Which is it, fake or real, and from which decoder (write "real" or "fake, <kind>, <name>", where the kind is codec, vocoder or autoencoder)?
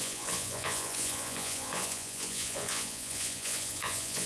fake, vocoder, Vocos